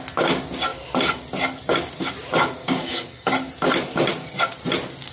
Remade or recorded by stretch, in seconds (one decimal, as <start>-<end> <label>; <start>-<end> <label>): 0.0-2.6 recorded; 2.6-3.3 remade; 3.3-5.1 recorded

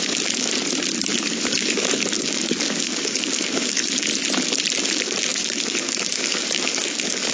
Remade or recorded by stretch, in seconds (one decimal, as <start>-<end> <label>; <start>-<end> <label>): 0.0-0.5 remade; 0.5-1.1 recorded; 1.1-4.1 remade; 4.1-4.8 recorded; 4.8-7.3 remade

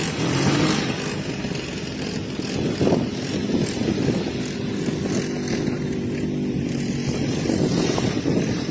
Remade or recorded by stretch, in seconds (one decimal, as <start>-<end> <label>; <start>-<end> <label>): 0.0-8.7 recorded

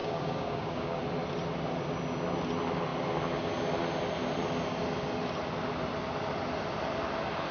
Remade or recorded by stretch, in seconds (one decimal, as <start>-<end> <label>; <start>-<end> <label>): 0.0-1.0 remade; 1.0-7.5 recorded

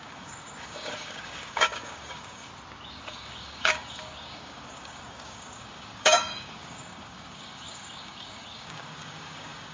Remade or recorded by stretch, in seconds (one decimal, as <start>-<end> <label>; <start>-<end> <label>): 0.0-2.5 remade; 2.5-3.0 recorded; 3.0-9.7 remade

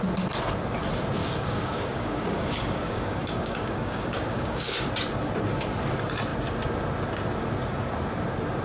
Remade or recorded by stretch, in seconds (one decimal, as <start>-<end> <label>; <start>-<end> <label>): 0.0-1.2 recorded; 1.2-4.9 remade; 4.9-8.6 recorded

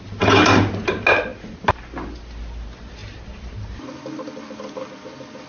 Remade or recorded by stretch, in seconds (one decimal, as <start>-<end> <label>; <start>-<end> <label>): 0.0-5.5 recorded

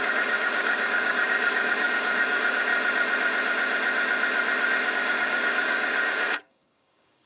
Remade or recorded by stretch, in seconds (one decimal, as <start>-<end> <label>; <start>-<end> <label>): 0.0-2.7 remade; 2.7-4.9 recorded; 4.9-7.3 remade